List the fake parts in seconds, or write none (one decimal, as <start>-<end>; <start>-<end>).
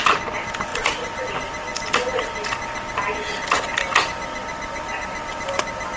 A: 0.7-1.2